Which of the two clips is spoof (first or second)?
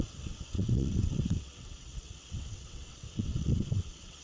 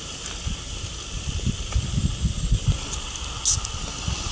first